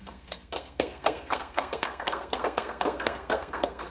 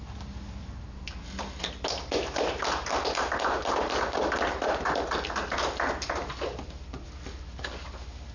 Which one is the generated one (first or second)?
first